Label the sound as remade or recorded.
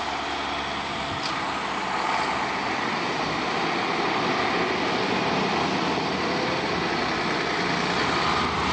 recorded